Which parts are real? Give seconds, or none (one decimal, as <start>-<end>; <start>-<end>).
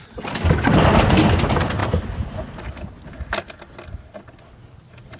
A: 0.0-5.2